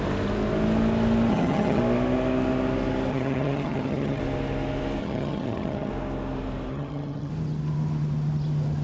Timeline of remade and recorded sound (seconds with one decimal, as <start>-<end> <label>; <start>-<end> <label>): 0.0-1.3 recorded; 1.3-1.8 remade; 1.8-3.1 recorded; 3.1-4.2 remade; 4.2-5.0 recorded; 5.0-5.9 remade; 5.9-6.7 recorded; 6.7-7.3 remade; 7.3-8.8 recorded